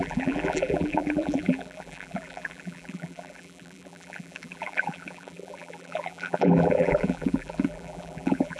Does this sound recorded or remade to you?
remade